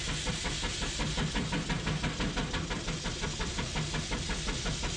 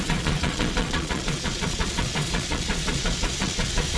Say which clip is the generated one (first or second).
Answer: second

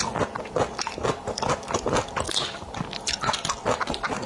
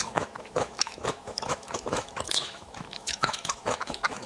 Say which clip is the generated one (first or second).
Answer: second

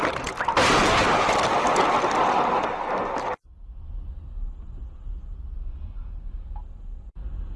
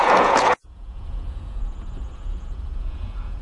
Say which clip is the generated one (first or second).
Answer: second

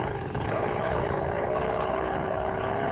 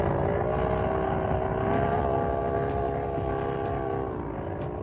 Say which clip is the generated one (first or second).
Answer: first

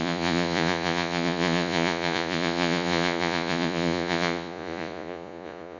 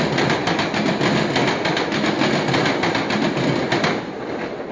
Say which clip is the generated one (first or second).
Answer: first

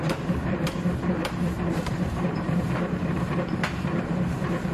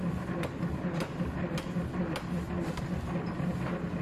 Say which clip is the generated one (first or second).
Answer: first